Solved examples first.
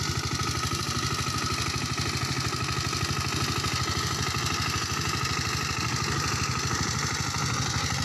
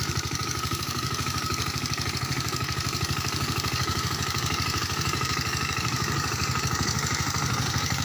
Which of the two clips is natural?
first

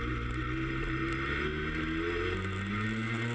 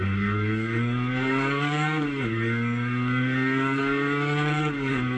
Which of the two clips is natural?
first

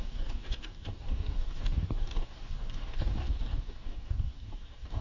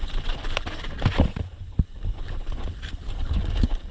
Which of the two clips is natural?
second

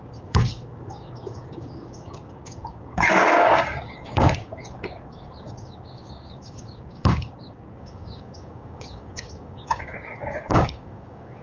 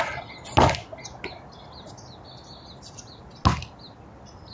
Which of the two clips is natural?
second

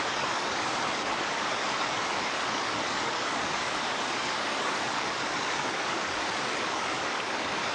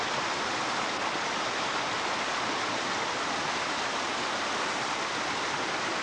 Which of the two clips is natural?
second